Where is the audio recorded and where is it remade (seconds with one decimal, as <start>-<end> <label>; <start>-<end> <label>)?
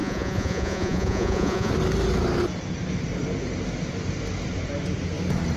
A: 0.0-1.7 remade; 1.7-5.6 recorded